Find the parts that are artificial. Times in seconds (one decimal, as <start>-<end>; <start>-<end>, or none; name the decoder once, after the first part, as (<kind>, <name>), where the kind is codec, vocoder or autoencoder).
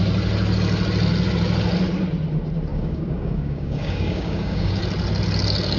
2.7-4.8 (codec, DAC)